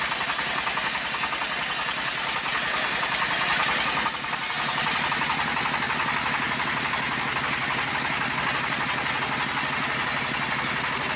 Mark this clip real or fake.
real